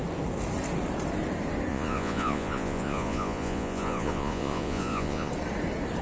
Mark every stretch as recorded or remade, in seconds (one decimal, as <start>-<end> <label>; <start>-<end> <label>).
0.0-1.7 recorded; 1.7-5.3 remade; 5.3-6.0 recorded